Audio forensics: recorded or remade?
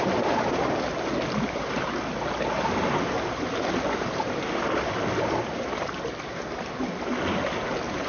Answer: recorded